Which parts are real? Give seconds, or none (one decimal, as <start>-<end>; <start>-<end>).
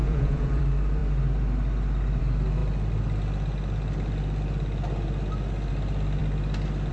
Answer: 0.6-6.9